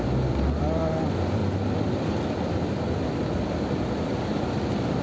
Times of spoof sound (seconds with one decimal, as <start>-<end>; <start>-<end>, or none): 0.0-1.4; 2.0-5.0